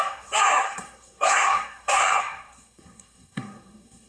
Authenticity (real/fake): fake